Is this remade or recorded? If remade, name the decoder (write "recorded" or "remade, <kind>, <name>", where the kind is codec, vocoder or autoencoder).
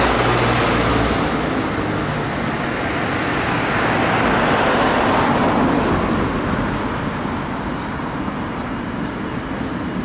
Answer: recorded